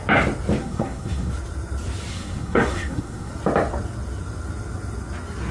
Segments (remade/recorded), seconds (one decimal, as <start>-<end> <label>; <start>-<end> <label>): 0.0-0.6 recorded; 0.6-1.3 remade; 1.3-2.1 recorded; 2.1-3.3 remade; 3.3-5.5 recorded